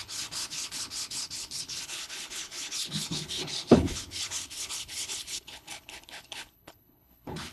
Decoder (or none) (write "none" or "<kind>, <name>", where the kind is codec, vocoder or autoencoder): codec, HILCodec